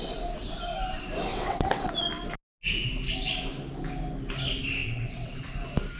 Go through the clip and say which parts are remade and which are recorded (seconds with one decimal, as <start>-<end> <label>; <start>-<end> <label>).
0.0-1.3 recorded; 1.3-1.9 remade; 1.9-4.8 recorded; 4.8-5.4 remade; 5.4-6.0 recorded